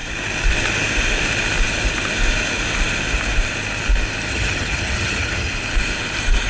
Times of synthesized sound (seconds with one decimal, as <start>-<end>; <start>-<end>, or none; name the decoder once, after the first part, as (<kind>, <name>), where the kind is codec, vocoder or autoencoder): 4.3-5.5 (vocoder, HiFi-GAN)